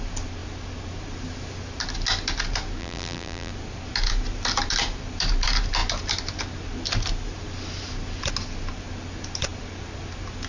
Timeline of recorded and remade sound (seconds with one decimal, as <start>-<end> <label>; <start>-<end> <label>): 0.0-2.8 recorded; 2.8-3.5 remade; 3.5-10.5 recorded